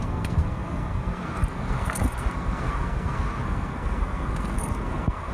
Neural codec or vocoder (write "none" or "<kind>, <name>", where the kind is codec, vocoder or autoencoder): codec, SNAC